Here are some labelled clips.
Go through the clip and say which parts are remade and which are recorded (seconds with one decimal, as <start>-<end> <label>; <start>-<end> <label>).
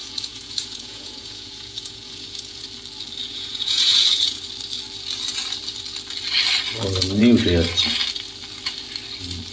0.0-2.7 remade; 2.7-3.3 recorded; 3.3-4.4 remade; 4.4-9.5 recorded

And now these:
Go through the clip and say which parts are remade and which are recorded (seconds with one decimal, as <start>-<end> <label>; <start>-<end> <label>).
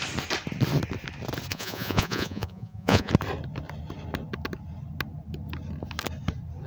0.0-1.5 recorded; 1.5-3.1 remade; 3.1-6.7 recorded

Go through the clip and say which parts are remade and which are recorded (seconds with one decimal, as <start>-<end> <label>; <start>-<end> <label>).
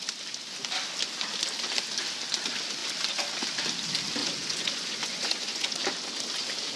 0.0-4.2 recorded; 4.2-5.8 remade; 5.8-6.8 recorded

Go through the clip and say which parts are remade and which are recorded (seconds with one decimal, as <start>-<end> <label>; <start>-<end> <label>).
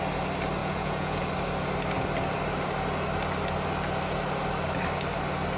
0.0-0.6 recorded; 0.6-1.2 remade; 1.2-5.6 recorded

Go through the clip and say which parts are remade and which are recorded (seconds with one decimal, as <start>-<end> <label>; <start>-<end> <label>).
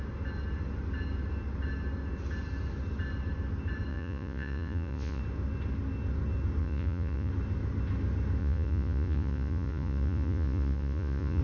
0.0-3.9 recorded; 3.9-5.2 remade; 5.2-6.6 recorded; 6.6-7.3 remade; 7.3-8.4 recorded; 8.4-11.4 remade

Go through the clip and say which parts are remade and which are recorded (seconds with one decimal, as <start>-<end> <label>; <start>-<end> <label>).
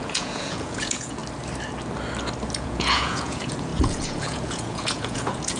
0.0-1.2 remade; 1.2-2.6 recorded; 2.6-5.6 remade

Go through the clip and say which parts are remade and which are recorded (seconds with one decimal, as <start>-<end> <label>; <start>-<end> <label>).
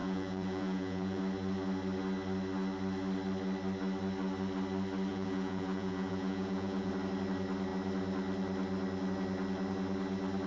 0.0-1.2 remade; 1.2-5.1 recorded; 5.1-6.9 remade; 6.9-10.5 recorded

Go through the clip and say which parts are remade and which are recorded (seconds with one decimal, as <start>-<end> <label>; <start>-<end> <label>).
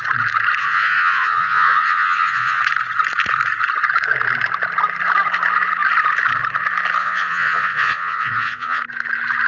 0.0-0.6 recorded; 0.6-2.6 remade; 2.6-7.0 recorded; 7.0-8.8 remade; 8.8-9.5 recorded